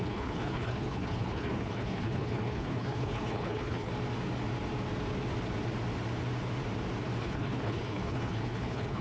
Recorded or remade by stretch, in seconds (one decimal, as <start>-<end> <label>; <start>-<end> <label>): 0.0-3.9 remade; 3.9-7.2 recorded; 7.2-9.0 remade

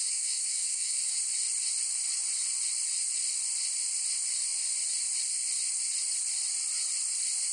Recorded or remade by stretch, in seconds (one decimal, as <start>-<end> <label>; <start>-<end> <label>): 0.0-1.2 remade; 1.2-7.5 recorded

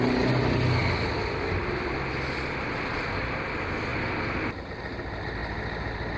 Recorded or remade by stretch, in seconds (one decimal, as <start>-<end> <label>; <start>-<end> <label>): 0.0-6.2 recorded

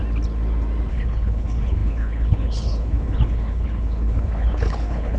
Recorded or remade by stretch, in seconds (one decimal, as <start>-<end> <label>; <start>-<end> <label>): 0.0-0.9 recorded; 0.9-5.2 remade

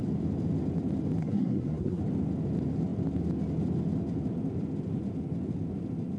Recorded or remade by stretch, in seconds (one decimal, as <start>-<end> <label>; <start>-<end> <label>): 0.0-1.2 recorded; 1.2-2.0 remade; 2.0-6.2 recorded

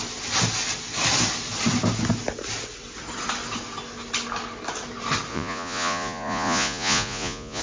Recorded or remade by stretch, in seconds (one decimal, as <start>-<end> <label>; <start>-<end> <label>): 0.0-5.3 recorded; 5.3-7.6 remade